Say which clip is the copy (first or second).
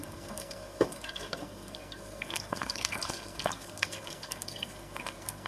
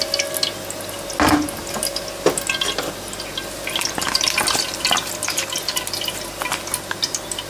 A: first